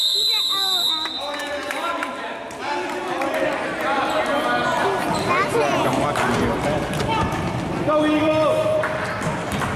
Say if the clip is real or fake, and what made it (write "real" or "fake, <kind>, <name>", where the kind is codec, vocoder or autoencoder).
real